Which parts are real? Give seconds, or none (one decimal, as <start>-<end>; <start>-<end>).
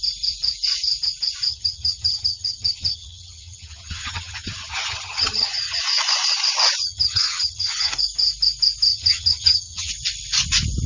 0.0-1.5; 5.8-6.8; 7.9-8.9; 9.9-10.9